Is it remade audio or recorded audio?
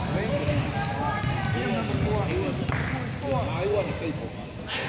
recorded